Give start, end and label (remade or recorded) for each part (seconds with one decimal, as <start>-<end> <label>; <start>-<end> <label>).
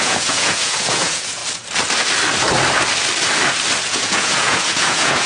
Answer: 0.0-1.4 remade; 1.4-3.8 recorded; 3.8-5.3 remade